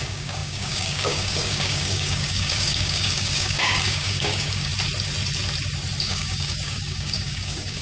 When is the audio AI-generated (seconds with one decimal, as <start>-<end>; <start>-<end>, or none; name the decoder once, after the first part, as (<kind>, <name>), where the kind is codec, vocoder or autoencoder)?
0.0-4.7 (codec, DAC); 6.0-7.8